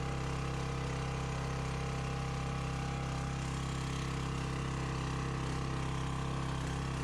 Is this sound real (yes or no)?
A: yes